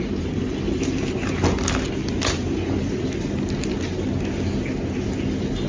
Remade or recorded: recorded